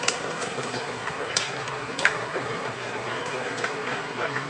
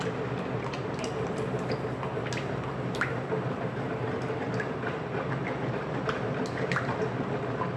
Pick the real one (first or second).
second